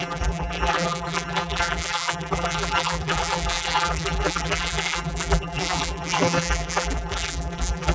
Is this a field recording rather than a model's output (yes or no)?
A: no